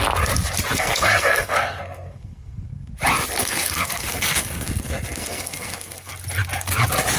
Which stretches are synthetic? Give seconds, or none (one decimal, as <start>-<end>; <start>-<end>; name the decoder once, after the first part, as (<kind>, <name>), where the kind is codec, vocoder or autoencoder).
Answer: 0.7-2.9 (codec, SNAC); 3.4-6.1